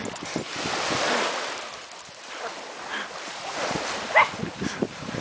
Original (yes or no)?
yes